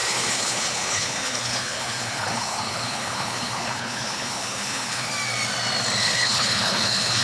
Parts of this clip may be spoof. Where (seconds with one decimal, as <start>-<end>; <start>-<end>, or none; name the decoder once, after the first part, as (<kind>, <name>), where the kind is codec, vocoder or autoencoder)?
0.0-5.1 (codec, HILCodec); 6.0-7.2